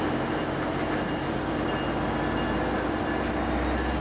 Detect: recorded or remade recorded